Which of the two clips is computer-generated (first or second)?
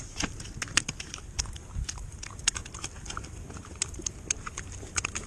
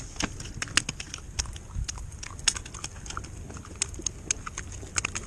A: first